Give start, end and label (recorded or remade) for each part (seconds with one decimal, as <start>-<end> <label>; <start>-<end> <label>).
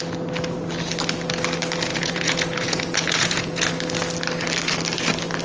0.0-1.9 recorded; 1.9-3.7 remade; 3.7-5.4 recorded